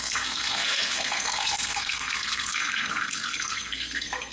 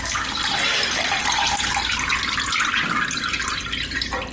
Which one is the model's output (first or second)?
first